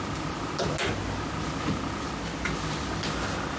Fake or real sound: real